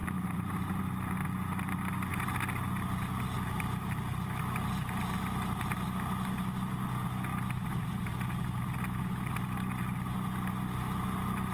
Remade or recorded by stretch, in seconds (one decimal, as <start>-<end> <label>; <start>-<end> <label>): 0.0-0.8 remade; 0.8-2.1 recorded; 2.1-2.7 remade; 2.7-7.3 recorded; 7.3-8.1 remade; 8.1-11.5 recorded

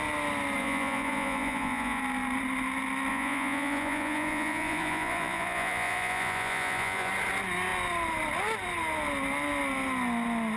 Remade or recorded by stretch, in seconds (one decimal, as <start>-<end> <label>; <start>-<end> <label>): 0.0-0.6 recorded; 0.6-2.0 remade; 2.0-3.1 recorded; 3.1-7.1 remade; 7.1-10.6 recorded

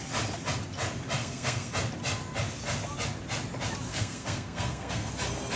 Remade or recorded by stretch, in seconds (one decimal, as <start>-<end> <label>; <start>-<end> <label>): 0.0-1.2 recorded; 1.2-1.7 remade; 1.7-3.9 recorded; 3.9-5.1 remade; 5.1-5.6 recorded

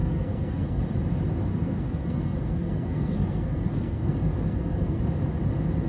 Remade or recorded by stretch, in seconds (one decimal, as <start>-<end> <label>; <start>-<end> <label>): 0.0-0.8 remade; 0.8-1.5 recorded; 1.5-5.0 remade; 5.0-5.9 recorded

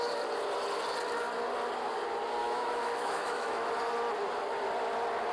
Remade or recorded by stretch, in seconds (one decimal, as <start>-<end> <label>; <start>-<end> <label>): 0.0-2.4 recorded; 2.4-3.7 remade; 3.7-5.3 recorded

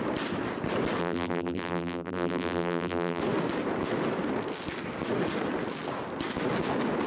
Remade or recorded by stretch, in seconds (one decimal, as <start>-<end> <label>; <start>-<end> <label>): 0.0-1.0 recorded; 1.0-3.2 remade; 3.2-7.1 recorded